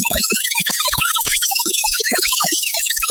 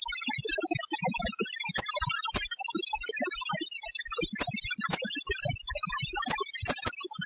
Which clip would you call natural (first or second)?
second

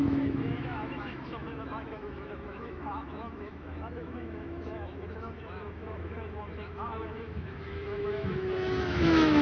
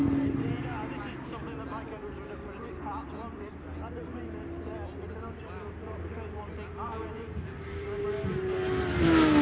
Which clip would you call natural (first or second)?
second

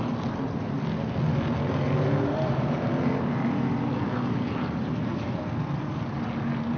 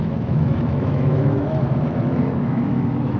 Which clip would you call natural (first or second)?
first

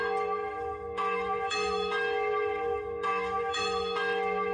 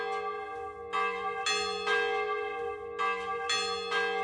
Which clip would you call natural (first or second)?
second